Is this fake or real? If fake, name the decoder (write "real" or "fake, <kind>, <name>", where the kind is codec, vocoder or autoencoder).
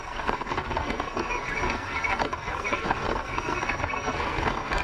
fake, codec, SNAC